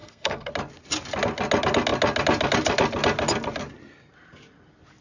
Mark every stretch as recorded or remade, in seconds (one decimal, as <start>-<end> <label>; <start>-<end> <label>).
0.0-0.5 remade; 0.5-5.0 recorded